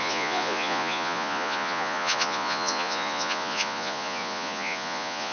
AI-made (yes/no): yes